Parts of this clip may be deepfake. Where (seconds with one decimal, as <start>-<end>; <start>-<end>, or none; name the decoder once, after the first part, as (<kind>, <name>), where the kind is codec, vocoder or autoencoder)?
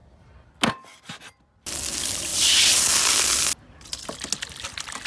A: none